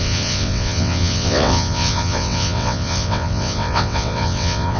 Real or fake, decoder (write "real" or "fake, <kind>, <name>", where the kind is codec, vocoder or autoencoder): fake, vocoder, WaveNeXt